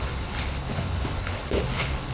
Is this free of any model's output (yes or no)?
no